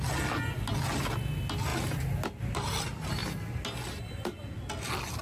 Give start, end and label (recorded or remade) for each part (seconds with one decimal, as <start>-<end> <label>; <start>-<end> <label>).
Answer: 0.0-5.2 recorded